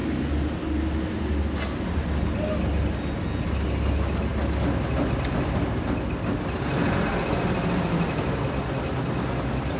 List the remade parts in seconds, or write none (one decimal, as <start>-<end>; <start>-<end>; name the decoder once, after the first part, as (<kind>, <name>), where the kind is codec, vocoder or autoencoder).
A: none

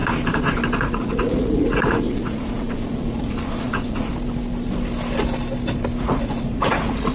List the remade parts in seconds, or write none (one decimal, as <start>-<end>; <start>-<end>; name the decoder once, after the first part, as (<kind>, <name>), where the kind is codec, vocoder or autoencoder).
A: 0.8-4.1 (vocoder, Vocos); 6.0-7.1

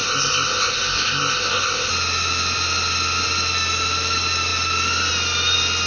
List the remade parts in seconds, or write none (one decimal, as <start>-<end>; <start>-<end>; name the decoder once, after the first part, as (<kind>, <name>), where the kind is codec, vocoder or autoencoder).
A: 0.0-1.9 (codec, SNAC)

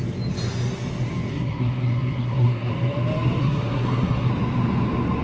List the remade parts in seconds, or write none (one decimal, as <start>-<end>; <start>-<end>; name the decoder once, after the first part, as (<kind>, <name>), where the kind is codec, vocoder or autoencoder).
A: 1.3-2.7 (codec, SNAC); 3.4-4.3

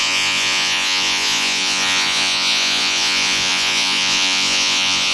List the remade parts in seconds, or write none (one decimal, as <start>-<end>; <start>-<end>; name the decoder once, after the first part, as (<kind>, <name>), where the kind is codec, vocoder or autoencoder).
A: 0.0-5.1 (vocoder, Vocos)